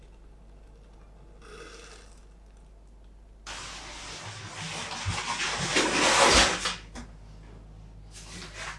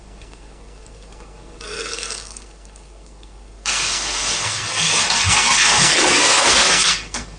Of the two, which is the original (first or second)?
first